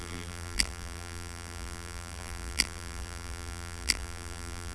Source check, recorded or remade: remade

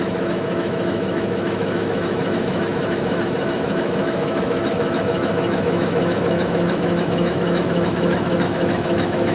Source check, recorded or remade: remade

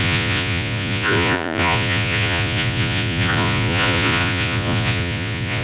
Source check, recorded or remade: remade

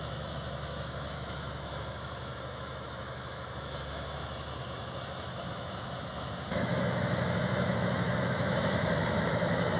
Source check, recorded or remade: remade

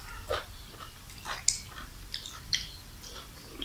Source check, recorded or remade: recorded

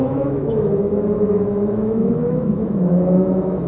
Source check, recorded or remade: remade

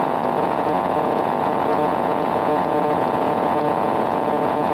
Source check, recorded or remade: remade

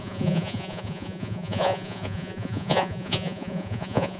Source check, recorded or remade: remade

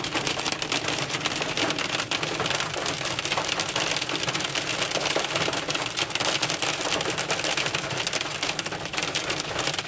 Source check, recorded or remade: recorded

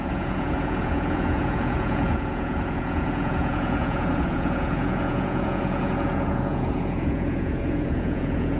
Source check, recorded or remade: remade